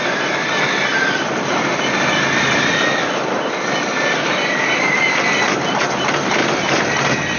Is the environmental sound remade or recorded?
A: recorded